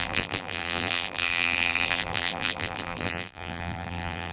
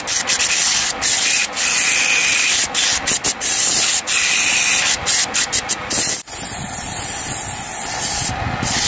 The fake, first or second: first